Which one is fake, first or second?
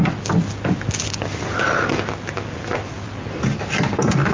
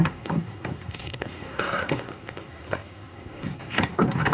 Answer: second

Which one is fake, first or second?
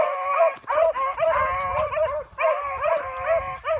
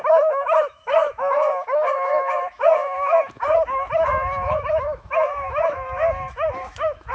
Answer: second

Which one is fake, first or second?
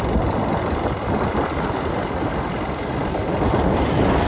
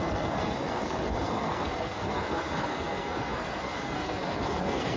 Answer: second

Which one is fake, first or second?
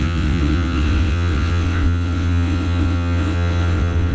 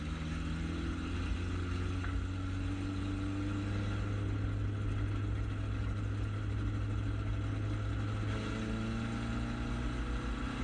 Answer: first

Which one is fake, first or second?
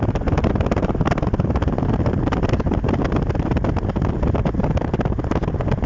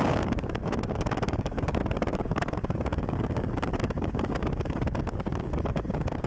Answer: second